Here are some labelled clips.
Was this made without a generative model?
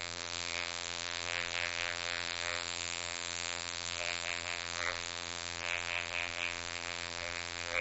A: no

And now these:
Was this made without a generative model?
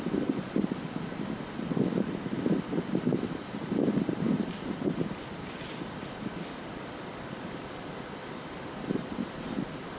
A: yes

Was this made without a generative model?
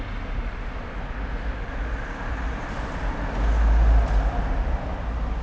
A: yes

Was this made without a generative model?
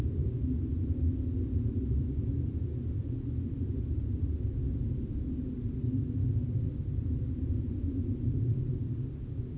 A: yes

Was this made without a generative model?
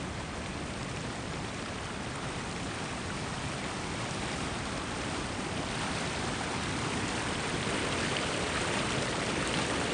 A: no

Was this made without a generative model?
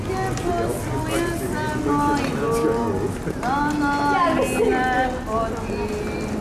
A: yes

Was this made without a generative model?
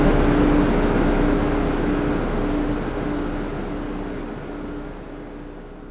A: yes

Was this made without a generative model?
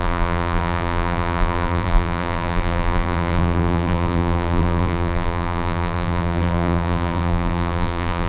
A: no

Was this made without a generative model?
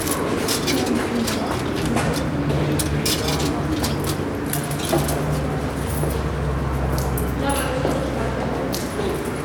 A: yes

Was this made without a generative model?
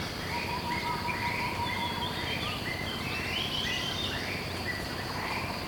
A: no